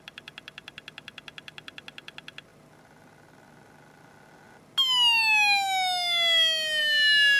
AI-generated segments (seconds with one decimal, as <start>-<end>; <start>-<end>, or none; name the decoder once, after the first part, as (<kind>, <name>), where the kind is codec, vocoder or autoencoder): none